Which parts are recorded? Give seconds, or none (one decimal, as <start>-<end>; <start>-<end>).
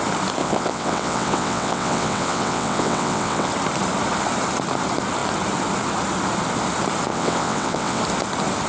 0.0-0.4; 3.5-7.1; 8.0-8.7